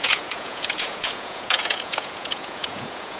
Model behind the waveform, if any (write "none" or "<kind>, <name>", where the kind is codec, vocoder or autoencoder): vocoder, Vocos